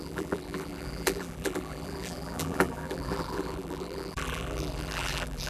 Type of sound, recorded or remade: remade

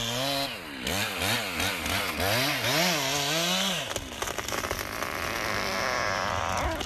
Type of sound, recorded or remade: recorded